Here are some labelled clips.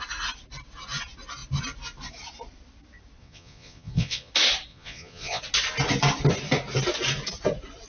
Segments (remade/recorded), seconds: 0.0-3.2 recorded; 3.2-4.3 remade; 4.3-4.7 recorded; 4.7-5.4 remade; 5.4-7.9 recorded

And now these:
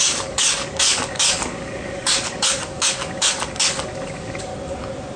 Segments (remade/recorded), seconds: 0.0-4.5 remade; 4.5-5.2 recorded

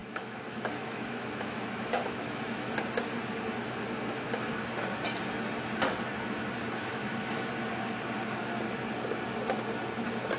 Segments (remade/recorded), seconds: 0.0-2.7 remade; 2.7-6.9 recorded; 6.9-7.5 remade; 7.5-10.4 recorded

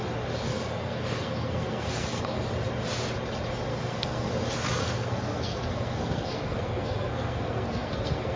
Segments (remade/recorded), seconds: 0.0-0.5 recorded; 0.5-2.4 remade; 2.4-3.7 recorded; 3.7-4.3 remade; 4.3-4.8 recorded; 4.8-8.4 remade

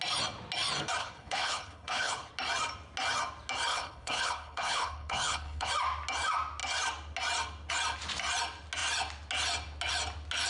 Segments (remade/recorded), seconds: 0.0-1.0 recorded; 1.0-2.3 remade; 2.3-3.7 recorded; 3.7-5.7 remade; 5.7-10.5 recorded